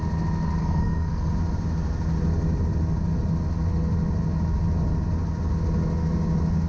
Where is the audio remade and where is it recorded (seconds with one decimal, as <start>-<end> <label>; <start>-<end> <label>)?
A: 0.0-0.6 recorded; 0.6-1.3 remade; 1.3-6.7 recorded